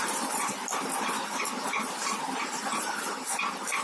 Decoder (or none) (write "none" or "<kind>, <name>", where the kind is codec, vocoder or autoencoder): none